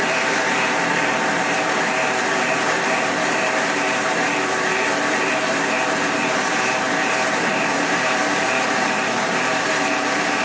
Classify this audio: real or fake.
fake